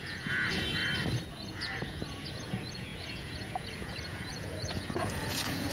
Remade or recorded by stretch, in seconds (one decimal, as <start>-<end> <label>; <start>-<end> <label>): 0.0-0.8 remade; 0.8-1.3 recorded; 1.3-5.7 remade